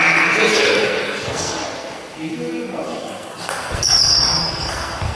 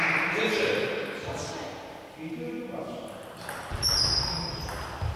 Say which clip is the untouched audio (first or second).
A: second